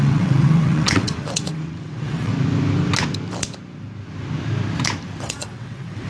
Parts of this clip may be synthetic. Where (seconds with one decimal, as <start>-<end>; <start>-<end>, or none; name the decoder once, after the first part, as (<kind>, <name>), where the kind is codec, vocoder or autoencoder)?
0.0-2.3 (vocoder, WaveNeXt); 5.2-6.1